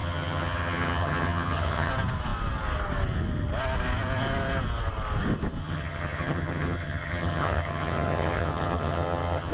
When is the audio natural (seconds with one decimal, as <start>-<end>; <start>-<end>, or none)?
1.9-5.6